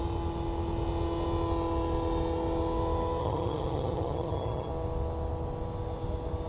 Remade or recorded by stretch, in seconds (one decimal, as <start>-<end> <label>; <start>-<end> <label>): 0.0-3.2 recorded; 3.2-4.7 remade; 4.7-6.5 recorded